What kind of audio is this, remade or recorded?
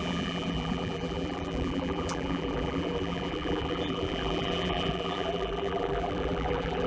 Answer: remade